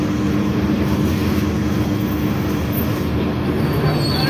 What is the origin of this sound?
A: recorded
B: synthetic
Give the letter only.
A